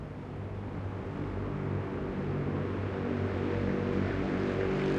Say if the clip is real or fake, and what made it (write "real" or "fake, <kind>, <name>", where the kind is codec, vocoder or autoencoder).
real